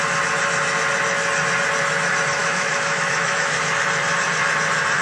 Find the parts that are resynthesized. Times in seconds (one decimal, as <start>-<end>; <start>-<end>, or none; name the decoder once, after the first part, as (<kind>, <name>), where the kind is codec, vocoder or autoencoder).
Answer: 2.4-3.6 (autoencoder, DAC-VAE)

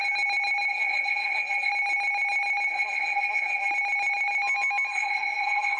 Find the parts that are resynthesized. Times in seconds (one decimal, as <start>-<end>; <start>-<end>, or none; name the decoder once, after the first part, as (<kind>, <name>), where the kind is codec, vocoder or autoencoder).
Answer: 0.7-1.7 (codec, SNAC); 2.7-3.7; 4.9-5.8

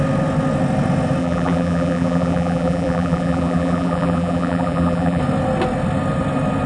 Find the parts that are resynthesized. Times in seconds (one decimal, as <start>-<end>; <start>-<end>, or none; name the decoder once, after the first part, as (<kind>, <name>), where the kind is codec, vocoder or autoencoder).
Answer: 1.2-5.2 (vocoder, BigVGAN v2)

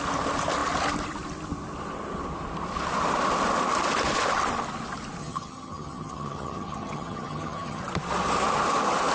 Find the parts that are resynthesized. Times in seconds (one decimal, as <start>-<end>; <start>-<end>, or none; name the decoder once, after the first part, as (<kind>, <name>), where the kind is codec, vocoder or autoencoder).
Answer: 5.2-7.8 (vocoder, HiFi-GAN)